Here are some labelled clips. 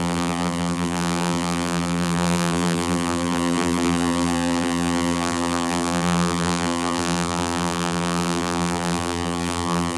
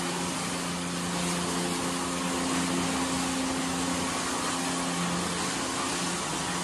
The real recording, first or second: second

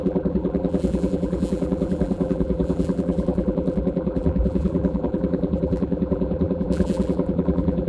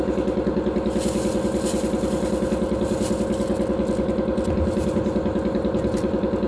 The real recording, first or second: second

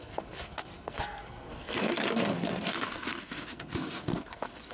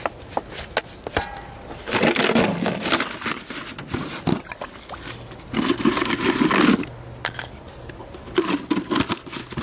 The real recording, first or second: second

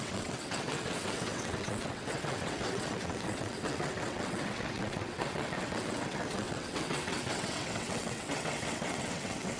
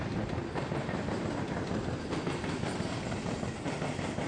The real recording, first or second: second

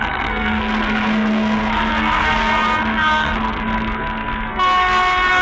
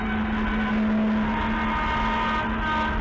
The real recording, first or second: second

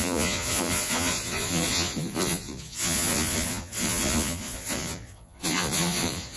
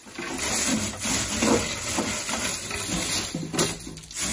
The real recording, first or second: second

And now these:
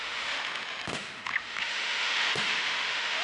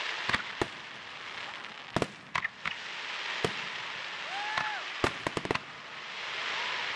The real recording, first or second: second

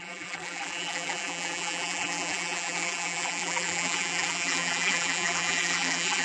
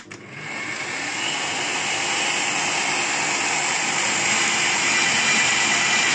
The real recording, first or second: second